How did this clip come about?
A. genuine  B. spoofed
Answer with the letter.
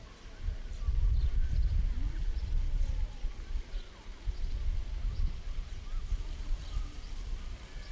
A